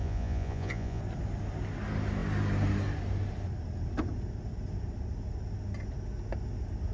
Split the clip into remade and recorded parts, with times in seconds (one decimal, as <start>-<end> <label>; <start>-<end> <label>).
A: 0.0-1.0 remade; 1.0-6.9 recorded